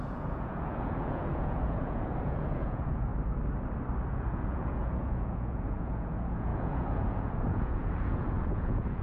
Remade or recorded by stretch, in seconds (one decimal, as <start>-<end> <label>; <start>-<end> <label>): 0.0-3.1 remade; 3.1-4.1 recorded; 4.1-9.0 remade